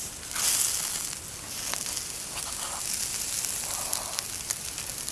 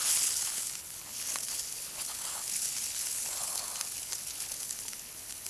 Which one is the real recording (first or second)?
first